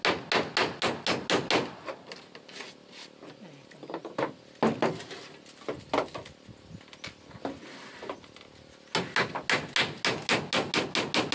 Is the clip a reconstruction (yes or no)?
no